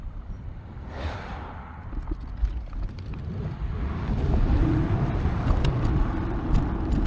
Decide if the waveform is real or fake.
fake